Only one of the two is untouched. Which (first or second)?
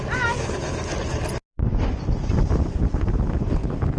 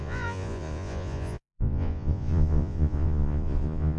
first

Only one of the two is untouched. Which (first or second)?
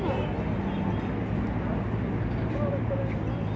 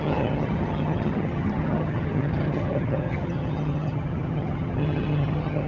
first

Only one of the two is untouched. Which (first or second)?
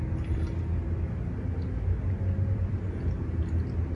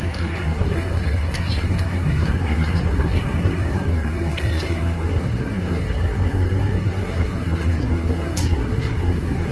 first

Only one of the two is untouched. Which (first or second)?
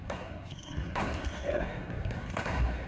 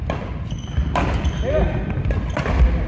second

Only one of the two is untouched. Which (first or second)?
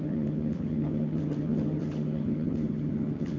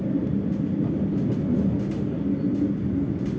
second